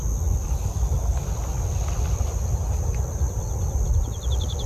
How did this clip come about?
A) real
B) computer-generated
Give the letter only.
A